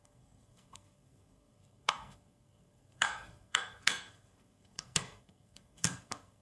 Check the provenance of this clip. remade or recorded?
remade